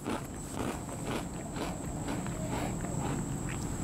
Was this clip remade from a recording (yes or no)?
no